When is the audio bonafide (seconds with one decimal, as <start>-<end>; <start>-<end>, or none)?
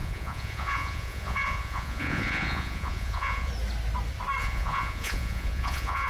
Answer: 3.5-4.4